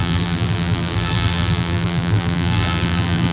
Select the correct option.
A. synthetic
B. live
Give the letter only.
A